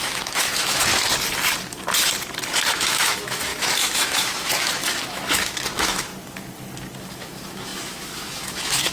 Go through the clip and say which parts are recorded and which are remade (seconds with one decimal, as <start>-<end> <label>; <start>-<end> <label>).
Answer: 0.0-0.9 remade; 0.9-2.7 recorded; 2.7-6.1 remade; 6.1-7.1 recorded; 7.1-8.9 remade